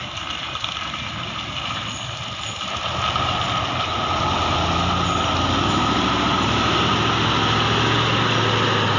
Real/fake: real